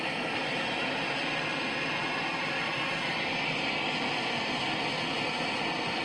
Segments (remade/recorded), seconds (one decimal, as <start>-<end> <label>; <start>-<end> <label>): 0.0-6.0 recorded